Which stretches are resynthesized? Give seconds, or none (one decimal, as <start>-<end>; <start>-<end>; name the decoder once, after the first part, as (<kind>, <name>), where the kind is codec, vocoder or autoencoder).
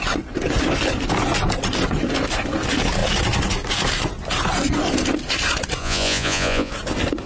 5.8-6.7 (vocoder, Vocos)